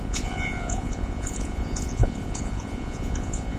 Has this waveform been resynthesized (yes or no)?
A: yes